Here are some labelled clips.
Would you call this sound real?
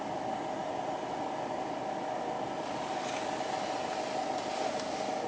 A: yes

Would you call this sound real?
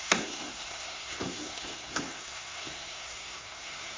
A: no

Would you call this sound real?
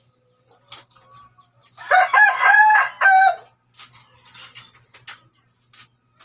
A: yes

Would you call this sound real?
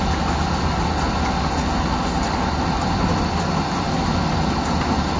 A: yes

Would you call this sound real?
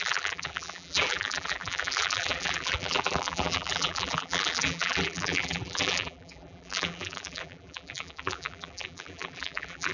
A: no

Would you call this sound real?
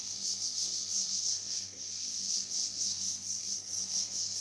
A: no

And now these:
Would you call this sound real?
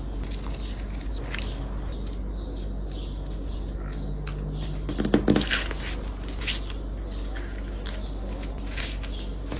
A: yes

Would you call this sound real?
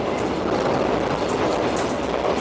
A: yes